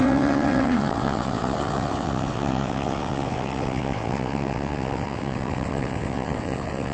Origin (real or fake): fake